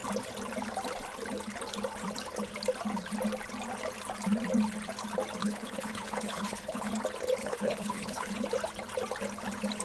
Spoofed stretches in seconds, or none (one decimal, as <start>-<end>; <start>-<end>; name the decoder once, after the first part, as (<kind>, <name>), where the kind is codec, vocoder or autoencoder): 5.4-6.9 (codec, HILCodec); 7.4-8.3